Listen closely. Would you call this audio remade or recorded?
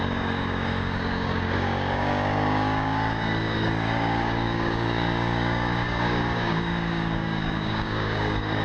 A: remade